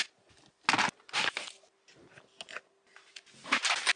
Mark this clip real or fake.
real